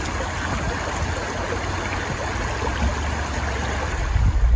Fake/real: real